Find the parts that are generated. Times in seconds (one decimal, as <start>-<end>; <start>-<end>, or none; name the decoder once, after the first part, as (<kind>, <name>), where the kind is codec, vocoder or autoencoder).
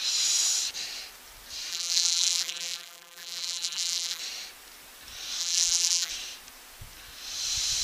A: 1.7-4.2 (vocoder, BigVGAN v2); 5.4-6.1